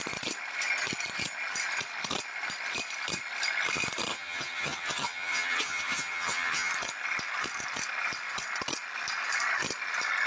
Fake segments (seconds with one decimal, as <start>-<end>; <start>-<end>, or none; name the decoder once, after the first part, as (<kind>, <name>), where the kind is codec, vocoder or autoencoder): 4.1-6.7 (vocoder, HiFi-GAN)